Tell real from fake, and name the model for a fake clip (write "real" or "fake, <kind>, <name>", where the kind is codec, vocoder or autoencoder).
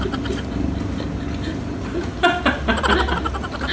real